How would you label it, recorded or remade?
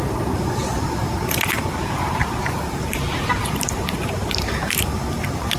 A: remade